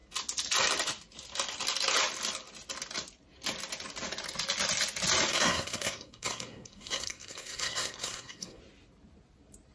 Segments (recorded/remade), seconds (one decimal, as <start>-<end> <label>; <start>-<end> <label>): 0.0-5.3 recorded; 5.3-8.6 remade; 8.6-9.7 recorded

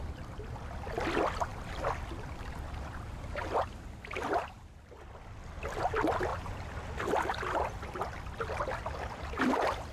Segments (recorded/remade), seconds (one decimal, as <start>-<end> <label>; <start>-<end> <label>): 0.0-9.9 recorded

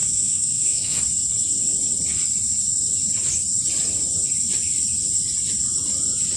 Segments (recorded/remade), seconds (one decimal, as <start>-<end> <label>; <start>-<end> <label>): 0.0-1.0 remade; 1.0-6.4 recorded

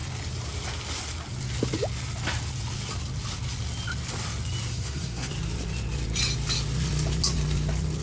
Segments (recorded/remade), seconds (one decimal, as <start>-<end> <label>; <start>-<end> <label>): 0.0-4.7 recorded; 4.7-5.3 remade; 5.3-8.0 recorded